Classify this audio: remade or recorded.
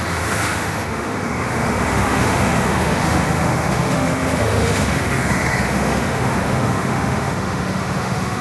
remade